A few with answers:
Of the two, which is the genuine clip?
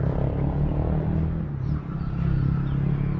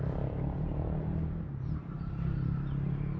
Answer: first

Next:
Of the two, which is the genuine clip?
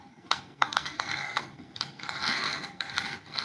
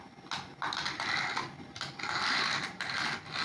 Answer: second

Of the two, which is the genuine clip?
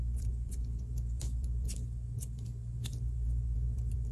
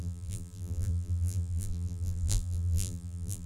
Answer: first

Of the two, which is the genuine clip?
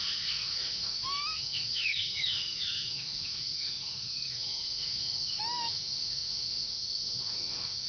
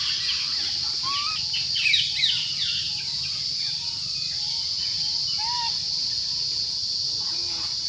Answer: second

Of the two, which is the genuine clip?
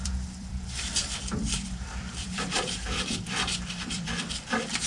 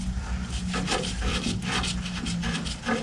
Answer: second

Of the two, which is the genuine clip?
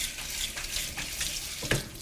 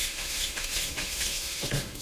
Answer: first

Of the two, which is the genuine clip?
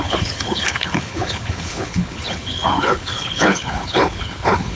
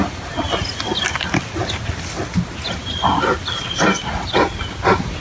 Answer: second